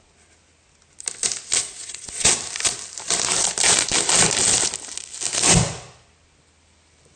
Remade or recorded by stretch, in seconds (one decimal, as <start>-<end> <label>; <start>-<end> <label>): 0.0-1.6 recorded; 1.6-2.3 remade; 2.3-7.2 recorded